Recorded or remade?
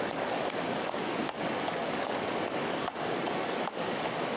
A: remade